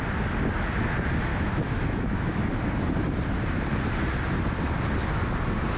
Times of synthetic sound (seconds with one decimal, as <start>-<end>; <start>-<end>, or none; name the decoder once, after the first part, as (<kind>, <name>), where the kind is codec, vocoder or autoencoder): 1.3-2.5 (autoencoder, DAC-VAE)